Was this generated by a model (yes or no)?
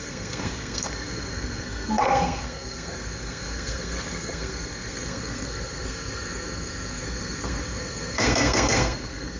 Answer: yes